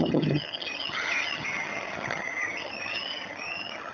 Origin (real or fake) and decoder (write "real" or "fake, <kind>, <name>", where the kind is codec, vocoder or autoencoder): fake, vocoder, HiFi-GAN